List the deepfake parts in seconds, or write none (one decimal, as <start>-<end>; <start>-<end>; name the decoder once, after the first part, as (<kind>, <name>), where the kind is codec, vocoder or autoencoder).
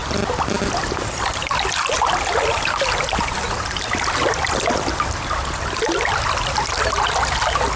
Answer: none